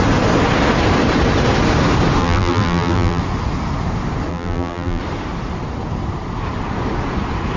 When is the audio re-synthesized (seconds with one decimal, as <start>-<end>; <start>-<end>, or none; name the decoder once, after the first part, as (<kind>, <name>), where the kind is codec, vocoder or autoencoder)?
2.2-3.2 (vocoder, BigVGAN v2); 4.3-5.0